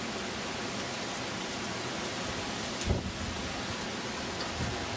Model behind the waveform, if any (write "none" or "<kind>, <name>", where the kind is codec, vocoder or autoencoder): none